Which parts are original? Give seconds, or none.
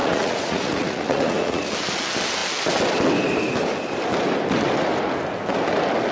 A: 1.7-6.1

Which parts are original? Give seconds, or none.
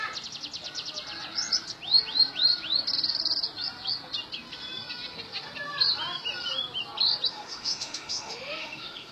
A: 0.0-7.3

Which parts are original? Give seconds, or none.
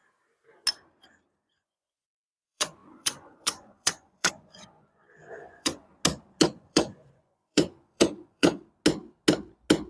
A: 0.0-1.4; 5.9-6.4; 8.6-9.9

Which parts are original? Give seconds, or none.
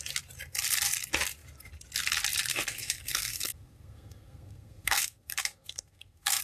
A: 0.0-2.5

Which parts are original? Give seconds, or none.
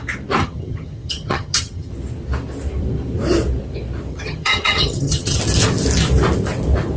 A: 0.0-0.4; 1.9-4.1; 5.4-7.0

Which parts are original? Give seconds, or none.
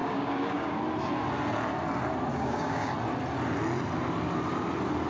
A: 0.8-2.3; 2.9-5.1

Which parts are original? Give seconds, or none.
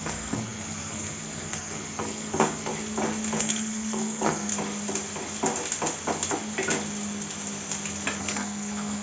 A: 2.7-3.4; 4.5-8.2